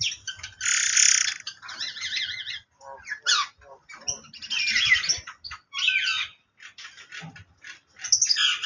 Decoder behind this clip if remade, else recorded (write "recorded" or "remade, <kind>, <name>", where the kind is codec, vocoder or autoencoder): recorded